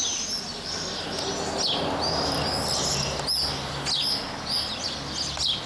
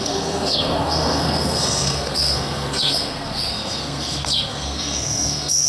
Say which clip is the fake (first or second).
second